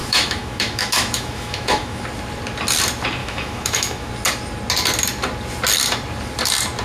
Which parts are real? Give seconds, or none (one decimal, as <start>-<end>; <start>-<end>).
2.0-3.2; 4.1-6.8